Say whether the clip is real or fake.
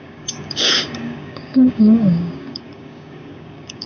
fake